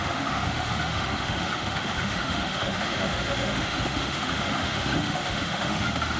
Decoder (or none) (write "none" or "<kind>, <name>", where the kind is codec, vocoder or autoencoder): autoencoder, DAC-VAE